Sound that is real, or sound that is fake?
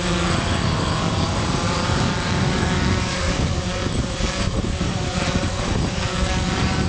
fake